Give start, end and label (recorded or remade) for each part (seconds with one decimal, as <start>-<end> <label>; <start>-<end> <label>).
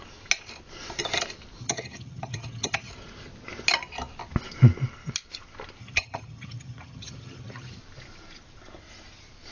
0.0-1.6 recorded; 1.6-2.9 remade; 2.9-5.8 recorded; 5.8-7.8 remade; 7.8-9.5 recorded